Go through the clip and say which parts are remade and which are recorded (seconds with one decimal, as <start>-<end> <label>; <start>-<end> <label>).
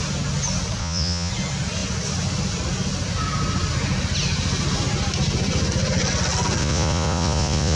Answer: 0.0-0.8 recorded; 0.8-1.3 remade; 1.3-6.6 recorded; 6.6-7.8 remade